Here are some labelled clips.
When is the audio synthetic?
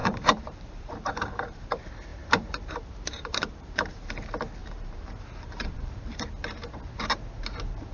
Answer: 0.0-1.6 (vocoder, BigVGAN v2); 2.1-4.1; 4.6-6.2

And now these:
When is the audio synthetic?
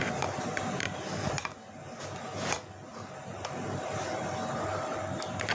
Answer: 0.0-1.0 (vocoder, BigVGAN v2); 1.8-2.5; 2.9-5.5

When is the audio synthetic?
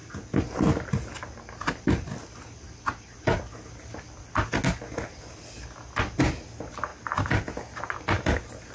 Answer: none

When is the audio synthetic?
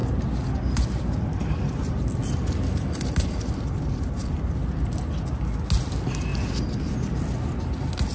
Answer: 6.3-6.9 (vocoder, BigVGAN v2)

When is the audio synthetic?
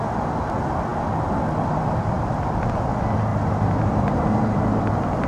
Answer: 3.3-4.8 (vocoder, BigVGAN v2)